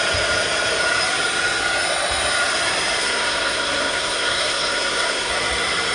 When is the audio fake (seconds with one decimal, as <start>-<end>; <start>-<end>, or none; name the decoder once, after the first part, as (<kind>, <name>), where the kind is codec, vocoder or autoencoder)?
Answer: 3.0-5.3 (codec, SNAC)